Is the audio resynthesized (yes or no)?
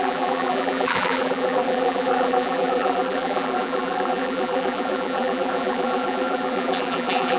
yes